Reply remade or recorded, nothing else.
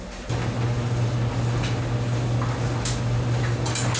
recorded